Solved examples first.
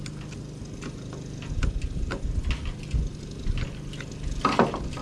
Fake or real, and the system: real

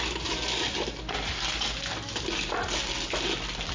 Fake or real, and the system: real